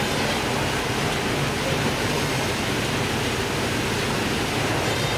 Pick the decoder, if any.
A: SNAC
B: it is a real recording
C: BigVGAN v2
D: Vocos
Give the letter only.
B